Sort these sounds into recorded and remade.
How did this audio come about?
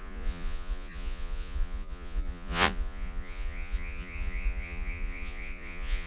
remade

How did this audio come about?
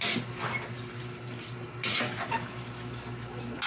recorded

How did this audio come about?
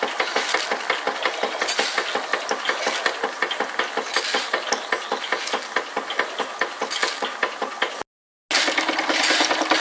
recorded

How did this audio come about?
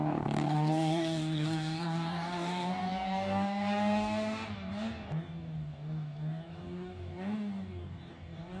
remade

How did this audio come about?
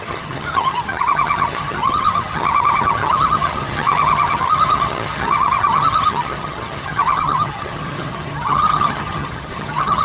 remade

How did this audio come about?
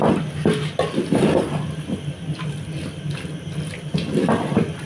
recorded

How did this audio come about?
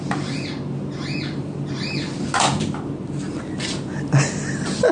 recorded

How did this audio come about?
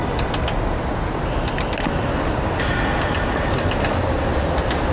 recorded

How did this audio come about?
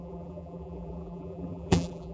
remade